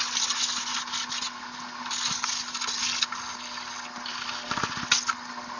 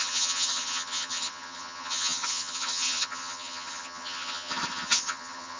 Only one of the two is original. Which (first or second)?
first